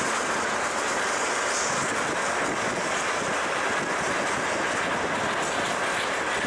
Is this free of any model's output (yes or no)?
yes